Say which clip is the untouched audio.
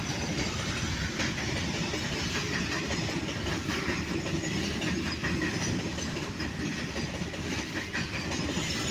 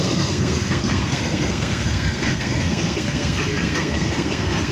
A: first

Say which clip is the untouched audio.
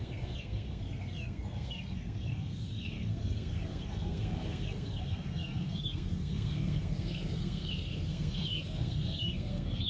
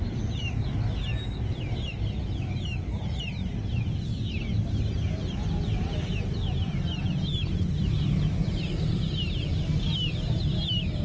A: second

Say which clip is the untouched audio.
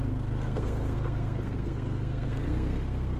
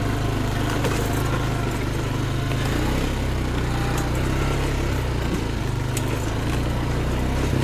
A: second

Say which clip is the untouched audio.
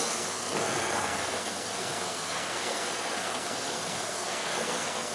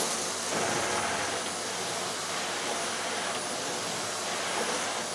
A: second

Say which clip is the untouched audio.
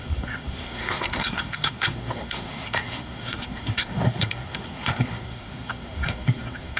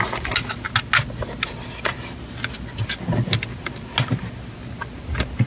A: second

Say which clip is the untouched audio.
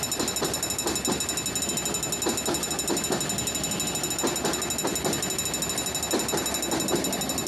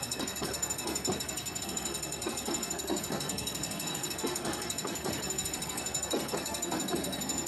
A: first